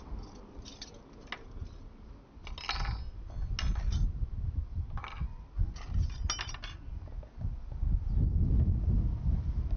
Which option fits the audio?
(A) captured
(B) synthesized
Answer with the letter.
A